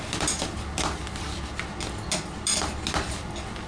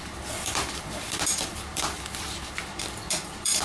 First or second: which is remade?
second